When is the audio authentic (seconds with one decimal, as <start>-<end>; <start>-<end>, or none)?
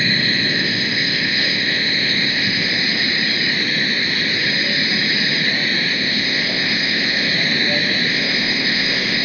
2.7-5.9; 7.3-8.1